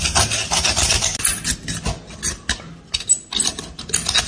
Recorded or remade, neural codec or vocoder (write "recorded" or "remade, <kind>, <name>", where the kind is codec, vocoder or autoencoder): recorded